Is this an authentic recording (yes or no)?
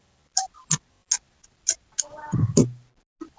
yes